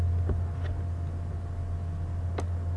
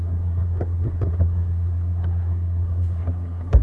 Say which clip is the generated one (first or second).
second